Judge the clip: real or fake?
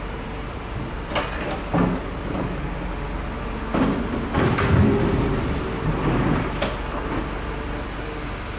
real